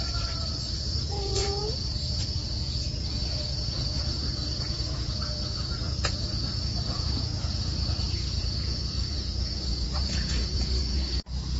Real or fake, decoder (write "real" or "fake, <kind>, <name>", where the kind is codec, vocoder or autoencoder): fake, vocoder, Vocos